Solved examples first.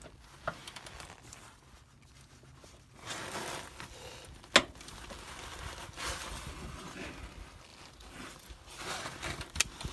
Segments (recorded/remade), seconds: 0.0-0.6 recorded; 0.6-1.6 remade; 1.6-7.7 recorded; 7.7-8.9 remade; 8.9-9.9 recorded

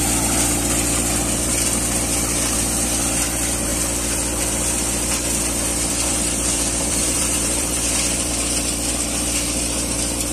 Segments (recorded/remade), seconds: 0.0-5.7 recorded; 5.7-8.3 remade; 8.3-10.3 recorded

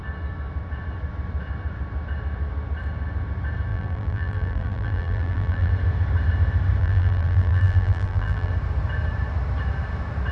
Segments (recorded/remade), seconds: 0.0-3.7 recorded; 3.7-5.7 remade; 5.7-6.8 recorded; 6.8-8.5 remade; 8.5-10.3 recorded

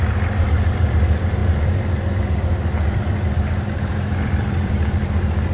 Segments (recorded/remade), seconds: 0.0-1.4 recorded; 1.4-4.7 remade; 4.7-5.5 recorded

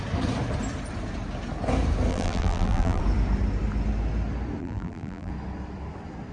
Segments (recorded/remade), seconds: 0.0-2.1 recorded; 2.1-3.0 remade; 3.0-4.6 recorded; 4.6-5.3 remade; 5.3-6.3 recorded